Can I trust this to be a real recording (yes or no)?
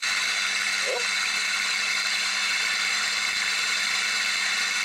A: no